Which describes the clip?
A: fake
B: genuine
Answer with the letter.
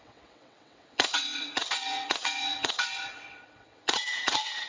A